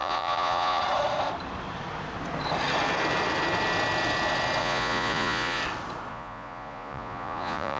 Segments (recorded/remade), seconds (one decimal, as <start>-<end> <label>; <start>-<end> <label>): 0.0-0.8 remade; 0.8-4.6 recorded; 4.6-5.6 remade; 5.6-6.1 recorded; 6.1-7.8 remade